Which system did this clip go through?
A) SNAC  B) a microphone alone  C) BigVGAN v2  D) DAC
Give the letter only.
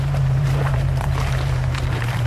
C